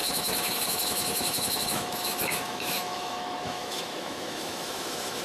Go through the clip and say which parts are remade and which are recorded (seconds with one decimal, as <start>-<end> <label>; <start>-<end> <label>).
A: 0.0-5.2 remade